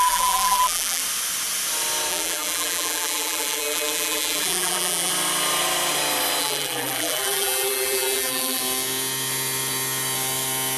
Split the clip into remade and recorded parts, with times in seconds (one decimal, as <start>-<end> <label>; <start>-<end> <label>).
0.0-1.0 remade; 1.0-2.1 recorded; 2.1-5.1 remade; 5.1-6.4 recorded; 6.4-8.6 remade; 8.6-10.8 recorded